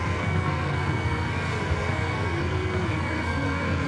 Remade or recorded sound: remade